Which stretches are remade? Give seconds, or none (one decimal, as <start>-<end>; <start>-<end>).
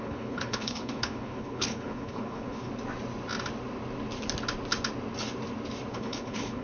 0.0-2.7; 5.9-6.6